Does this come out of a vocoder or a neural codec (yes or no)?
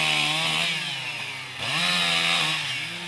no